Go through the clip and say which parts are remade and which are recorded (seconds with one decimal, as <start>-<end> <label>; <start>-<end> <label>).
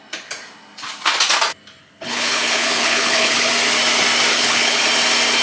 0.0-1.8 recorded; 1.8-3.5 remade; 3.5-4.3 recorded; 4.3-4.8 remade; 4.8-5.4 recorded